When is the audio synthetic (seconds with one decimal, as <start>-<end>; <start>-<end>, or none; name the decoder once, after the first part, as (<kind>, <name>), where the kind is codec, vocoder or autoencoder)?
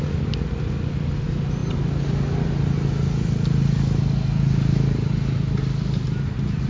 none